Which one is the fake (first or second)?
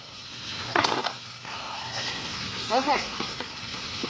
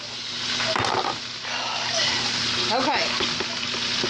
first